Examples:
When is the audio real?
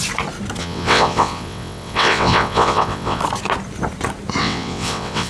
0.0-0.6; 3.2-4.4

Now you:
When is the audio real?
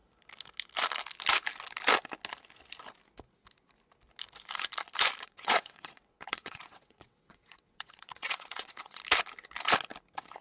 0.0-5.2; 9.0-10.4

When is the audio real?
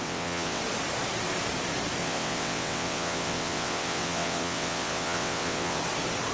0.6-2.0; 5.8-6.3